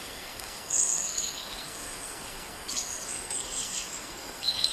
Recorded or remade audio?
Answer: remade